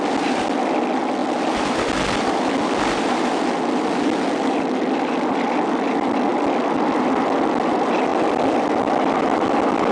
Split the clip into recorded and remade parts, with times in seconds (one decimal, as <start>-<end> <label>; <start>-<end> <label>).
0.0-9.9 recorded